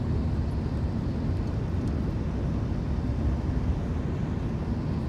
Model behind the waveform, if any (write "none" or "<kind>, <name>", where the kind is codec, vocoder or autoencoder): none